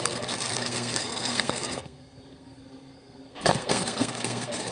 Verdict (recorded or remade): remade